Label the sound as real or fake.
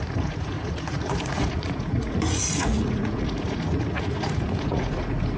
fake